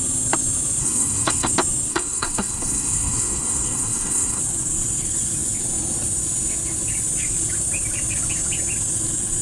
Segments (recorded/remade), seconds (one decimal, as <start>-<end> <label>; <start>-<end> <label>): 0.0-0.8 recorded; 0.8-1.5 remade; 1.5-1.9 recorded; 1.9-4.4 remade; 4.4-9.4 recorded